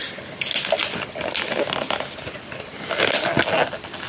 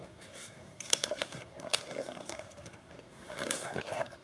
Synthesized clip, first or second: second